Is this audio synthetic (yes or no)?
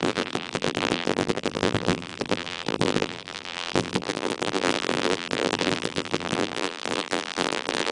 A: yes